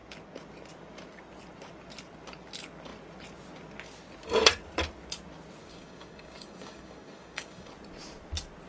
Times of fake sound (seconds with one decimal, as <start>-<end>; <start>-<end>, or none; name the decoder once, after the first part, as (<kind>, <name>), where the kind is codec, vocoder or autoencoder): 5.6-7.7 (codec, DAC)